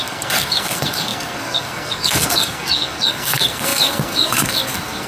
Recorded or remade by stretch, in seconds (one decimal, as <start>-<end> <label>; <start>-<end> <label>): 0.0-5.1 remade